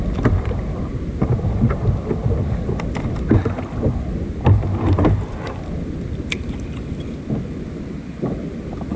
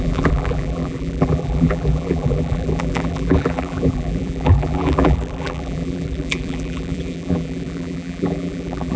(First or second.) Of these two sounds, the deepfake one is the second